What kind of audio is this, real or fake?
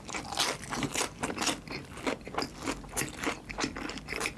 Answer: real